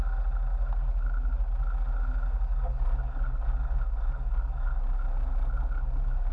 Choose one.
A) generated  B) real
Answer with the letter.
B